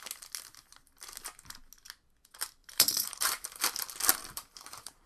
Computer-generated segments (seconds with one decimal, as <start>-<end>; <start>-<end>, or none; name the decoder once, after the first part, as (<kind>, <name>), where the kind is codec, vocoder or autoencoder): 2.6-3.6 (vocoder, BigVGAN v2); 4.2-5.1